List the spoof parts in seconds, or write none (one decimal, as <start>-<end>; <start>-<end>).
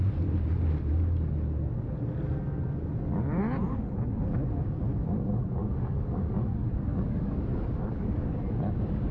5.6-8.5